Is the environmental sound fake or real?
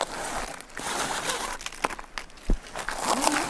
real